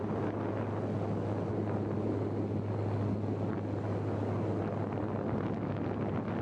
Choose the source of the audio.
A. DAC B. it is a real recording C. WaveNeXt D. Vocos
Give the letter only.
B